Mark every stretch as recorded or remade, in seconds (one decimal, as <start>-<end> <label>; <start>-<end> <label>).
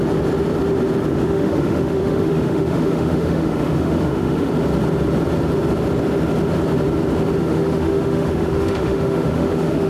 0.0-1.1 recorded; 1.1-4.5 remade; 4.5-7.4 recorded; 7.4-9.9 remade